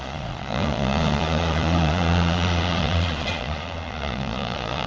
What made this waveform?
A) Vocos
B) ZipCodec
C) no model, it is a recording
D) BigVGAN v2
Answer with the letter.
A